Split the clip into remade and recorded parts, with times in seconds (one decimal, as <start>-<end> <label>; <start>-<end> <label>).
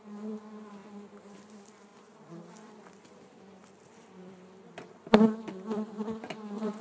0.0-1.9 recorded; 1.9-6.0 remade; 6.0-6.8 recorded